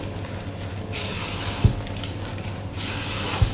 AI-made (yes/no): no